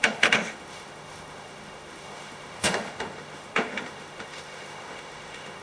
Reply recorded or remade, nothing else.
remade